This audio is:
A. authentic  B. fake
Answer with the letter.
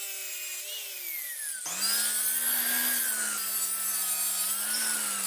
A